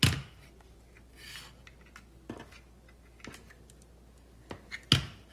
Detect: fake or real real